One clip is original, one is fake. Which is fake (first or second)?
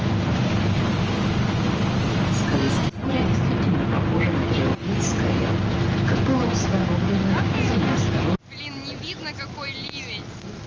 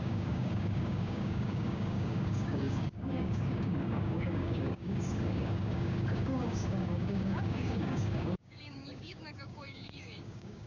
second